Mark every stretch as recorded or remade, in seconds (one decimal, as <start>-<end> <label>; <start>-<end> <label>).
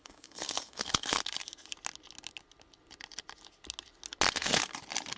0.0-1.2 remade; 1.2-4.3 recorded; 4.3-4.7 remade; 4.7-5.2 recorded